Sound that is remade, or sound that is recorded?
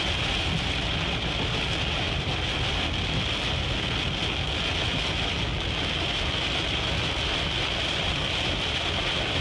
recorded